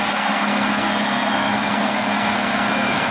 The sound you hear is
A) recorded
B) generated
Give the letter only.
B